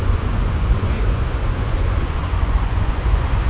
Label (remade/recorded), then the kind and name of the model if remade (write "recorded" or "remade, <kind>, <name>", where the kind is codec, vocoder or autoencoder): remade, vocoder, Vocos